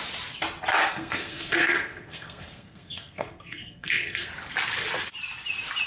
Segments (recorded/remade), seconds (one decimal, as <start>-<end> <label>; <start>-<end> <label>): 0.0-0.8 recorded; 0.8-4.3 remade; 4.3-5.9 recorded

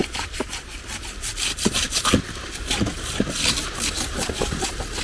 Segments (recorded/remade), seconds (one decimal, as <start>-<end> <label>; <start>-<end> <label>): 0.0-1.9 remade; 1.9-5.0 recorded

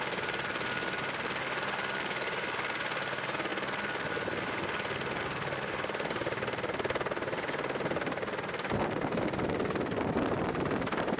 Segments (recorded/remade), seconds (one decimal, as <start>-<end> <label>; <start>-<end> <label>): 0.0-11.2 recorded

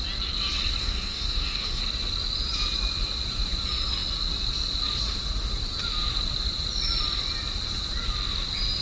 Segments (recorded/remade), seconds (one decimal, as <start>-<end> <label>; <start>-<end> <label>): 0.0-0.8 recorded; 0.8-1.8 remade; 1.8-8.8 recorded

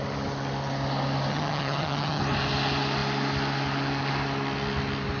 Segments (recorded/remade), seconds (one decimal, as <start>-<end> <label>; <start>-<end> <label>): 0.0-1.3 recorded; 1.3-2.2 remade; 2.2-5.2 recorded

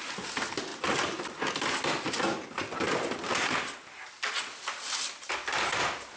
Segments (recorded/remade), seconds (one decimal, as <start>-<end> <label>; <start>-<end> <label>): 0.0-6.2 recorded

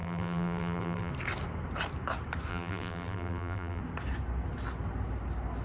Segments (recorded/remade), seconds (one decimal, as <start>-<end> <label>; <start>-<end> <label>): 0.0-1.1 remade; 1.1-2.5 recorded; 2.5-3.8 remade; 3.8-5.6 recorded

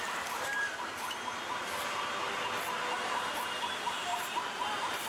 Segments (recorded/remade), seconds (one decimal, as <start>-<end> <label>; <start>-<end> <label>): 0.0-4.1 recorded; 4.1-5.1 remade